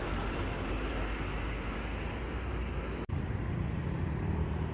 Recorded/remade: remade